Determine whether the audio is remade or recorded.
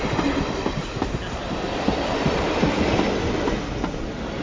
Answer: recorded